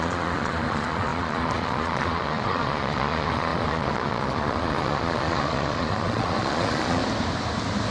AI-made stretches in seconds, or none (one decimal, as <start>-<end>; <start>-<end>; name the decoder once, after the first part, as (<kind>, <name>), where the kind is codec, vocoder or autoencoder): 0.0-7.0 (vocoder, Vocos)